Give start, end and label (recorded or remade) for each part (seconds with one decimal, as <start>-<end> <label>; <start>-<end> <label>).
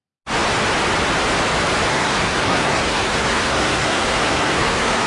0.0-1.9 recorded; 1.9-5.1 remade